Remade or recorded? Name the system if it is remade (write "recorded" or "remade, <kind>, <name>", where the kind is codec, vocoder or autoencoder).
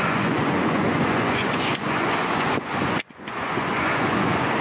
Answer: remade, vocoder, Vocos